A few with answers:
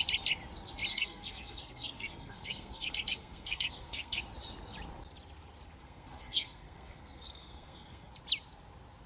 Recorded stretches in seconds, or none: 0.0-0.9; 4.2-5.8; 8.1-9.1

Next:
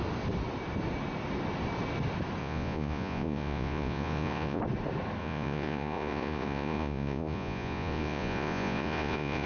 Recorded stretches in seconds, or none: 0.0-2.4; 4.6-5.2

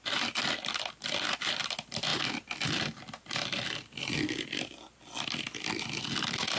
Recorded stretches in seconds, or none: none